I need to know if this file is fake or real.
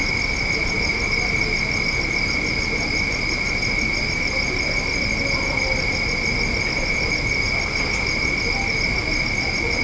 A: real